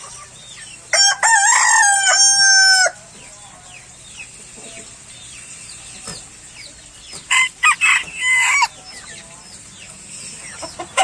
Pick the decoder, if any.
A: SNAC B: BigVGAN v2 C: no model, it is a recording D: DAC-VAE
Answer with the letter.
C